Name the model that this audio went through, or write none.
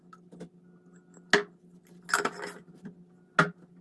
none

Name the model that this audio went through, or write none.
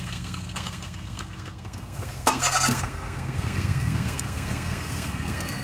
codec, SNAC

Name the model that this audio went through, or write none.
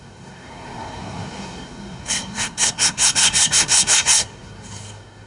codec, SNAC